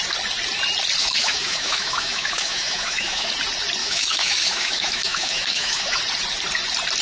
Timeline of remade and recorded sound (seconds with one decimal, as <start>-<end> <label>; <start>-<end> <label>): 0.0-1.0 recorded; 1.0-3.3 remade; 3.3-3.8 recorded; 3.8-6.0 remade; 6.0-7.0 recorded